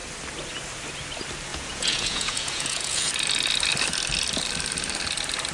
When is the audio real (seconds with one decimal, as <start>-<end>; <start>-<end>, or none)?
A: 0.0-1.5; 3.1-5.5